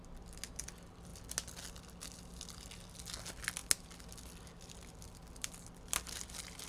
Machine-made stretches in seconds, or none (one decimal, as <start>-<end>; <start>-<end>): none